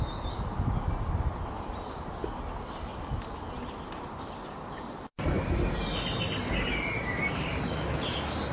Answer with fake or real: real